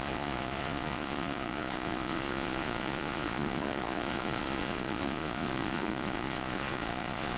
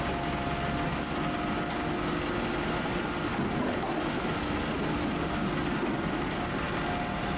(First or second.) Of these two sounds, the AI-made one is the first